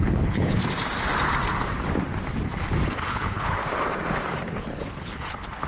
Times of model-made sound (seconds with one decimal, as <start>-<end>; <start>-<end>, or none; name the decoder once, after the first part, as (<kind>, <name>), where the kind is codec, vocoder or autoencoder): 0.0-0.6 (codec, HILCodec); 3.1-3.6; 4.4-5.7